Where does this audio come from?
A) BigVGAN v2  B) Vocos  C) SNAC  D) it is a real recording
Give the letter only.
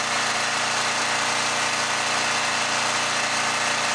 D